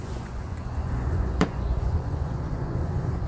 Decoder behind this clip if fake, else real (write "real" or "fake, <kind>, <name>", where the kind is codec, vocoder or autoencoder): fake, vocoder, Vocos